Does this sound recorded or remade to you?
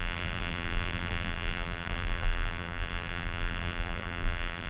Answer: remade